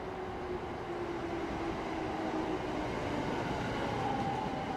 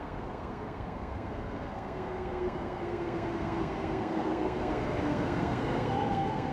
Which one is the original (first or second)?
first